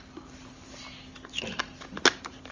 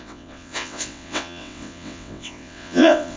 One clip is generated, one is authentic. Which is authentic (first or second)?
first